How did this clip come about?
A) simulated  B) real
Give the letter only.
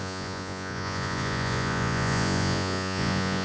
A